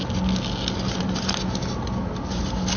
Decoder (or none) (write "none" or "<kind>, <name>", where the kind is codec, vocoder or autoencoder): none